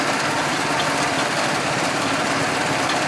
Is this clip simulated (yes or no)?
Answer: yes